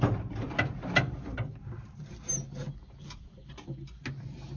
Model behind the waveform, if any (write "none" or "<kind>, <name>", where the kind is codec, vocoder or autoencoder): none